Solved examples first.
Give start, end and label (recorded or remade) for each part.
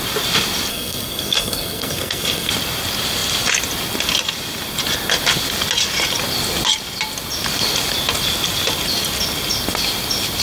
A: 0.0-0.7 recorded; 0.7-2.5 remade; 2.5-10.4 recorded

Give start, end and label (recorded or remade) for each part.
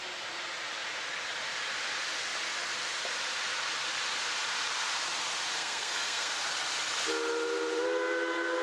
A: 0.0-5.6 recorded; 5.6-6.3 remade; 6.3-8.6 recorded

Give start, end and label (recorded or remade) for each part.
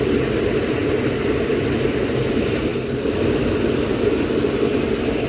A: 0.0-5.3 recorded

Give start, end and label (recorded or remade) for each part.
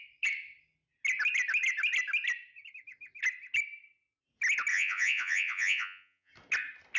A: 0.0-4.7 recorded; 4.7-6.3 remade; 6.3-7.0 recorded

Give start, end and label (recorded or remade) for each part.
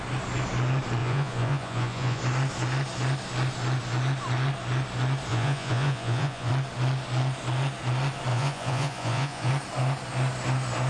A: 0.0-1.0 recorded; 1.0-2.2 remade; 2.2-5.3 recorded; 5.3-6.5 remade; 6.5-8.3 recorded; 8.3-9.5 remade; 9.5-10.9 recorded